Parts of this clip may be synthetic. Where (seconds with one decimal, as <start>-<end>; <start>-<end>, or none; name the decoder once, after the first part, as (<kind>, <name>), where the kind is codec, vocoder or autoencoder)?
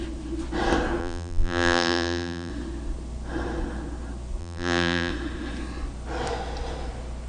1.0-2.5 (vocoder, BigVGAN v2); 4.4-5.1